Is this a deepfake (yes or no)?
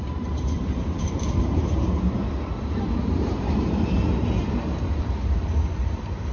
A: yes